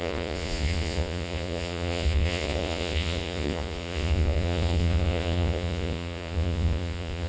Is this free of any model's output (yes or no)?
no